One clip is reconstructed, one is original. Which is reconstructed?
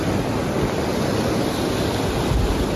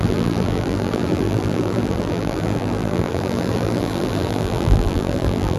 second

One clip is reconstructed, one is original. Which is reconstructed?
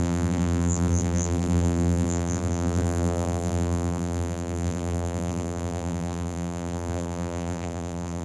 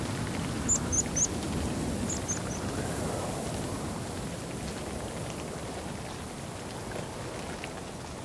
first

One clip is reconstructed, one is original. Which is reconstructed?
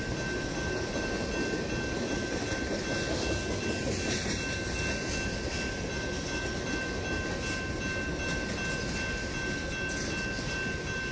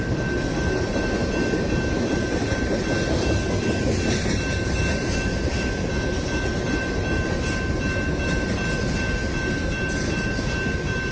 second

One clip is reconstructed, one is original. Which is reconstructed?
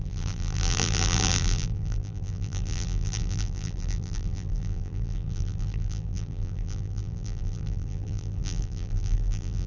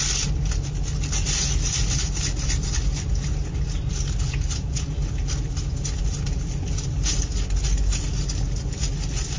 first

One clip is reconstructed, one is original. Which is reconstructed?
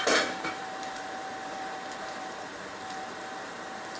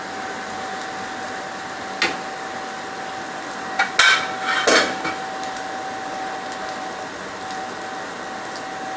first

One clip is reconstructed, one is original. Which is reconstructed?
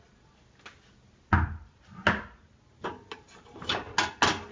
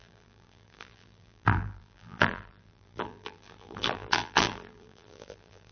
second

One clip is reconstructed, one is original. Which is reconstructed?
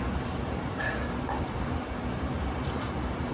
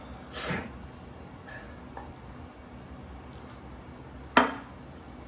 first